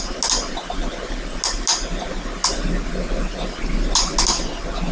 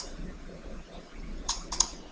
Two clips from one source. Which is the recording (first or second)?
first